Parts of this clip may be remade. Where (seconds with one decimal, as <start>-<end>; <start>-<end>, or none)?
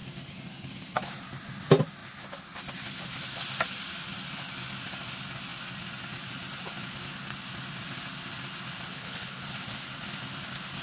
8.9-9.4